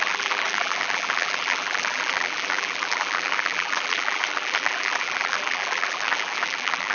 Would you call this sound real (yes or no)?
no